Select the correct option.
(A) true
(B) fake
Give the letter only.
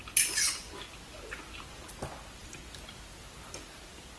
A